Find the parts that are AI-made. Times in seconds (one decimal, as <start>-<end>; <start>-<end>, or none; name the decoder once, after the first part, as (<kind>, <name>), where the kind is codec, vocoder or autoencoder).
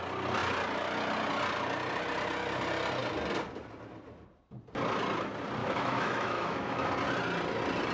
5.6-6.9 (autoencoder, DAC-VAE)